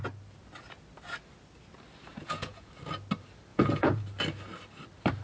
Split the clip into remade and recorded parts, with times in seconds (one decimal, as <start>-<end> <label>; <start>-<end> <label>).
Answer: 0.0-2.1 recorded; 2.1-2.7 remade; 2.7-3.5 recorded; 3.5-4.0 remade; 4.0-5.2 recorded